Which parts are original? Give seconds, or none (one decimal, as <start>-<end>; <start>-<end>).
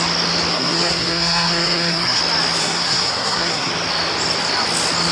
0.0-0.5; 2.2-2.6; 3.7-5.1